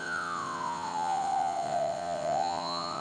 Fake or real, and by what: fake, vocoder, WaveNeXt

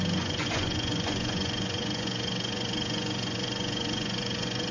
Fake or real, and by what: fake, vocoder, Vocos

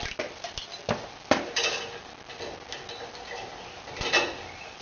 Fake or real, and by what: real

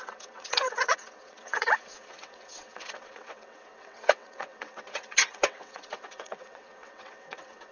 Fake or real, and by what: fake, vocoder, WaveNeXt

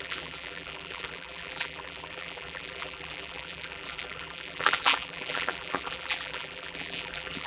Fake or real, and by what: fake, vocoder, BigVGAN v2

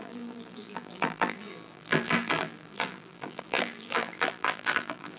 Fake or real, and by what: fake, vocoder, BigVGAN v2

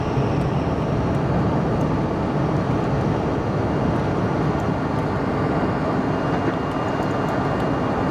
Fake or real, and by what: real